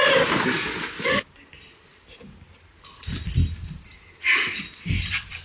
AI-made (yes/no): no